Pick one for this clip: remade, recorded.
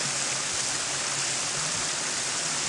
recorded